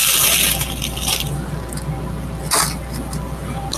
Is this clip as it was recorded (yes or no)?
yes